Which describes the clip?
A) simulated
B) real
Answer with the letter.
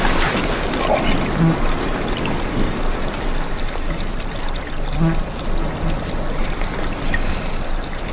B